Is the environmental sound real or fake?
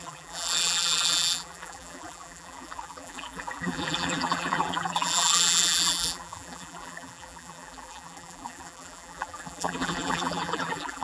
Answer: fake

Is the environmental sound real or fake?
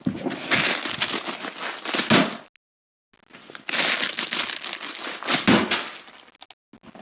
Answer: real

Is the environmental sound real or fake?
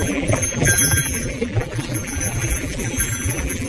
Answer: fake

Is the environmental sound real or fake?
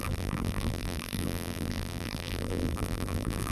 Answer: fake